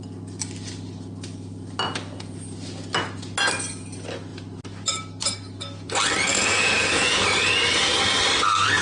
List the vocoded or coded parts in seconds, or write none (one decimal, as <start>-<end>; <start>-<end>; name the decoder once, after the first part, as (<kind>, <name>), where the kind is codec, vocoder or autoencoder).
6.3-7.2 (vocoder, Vocos)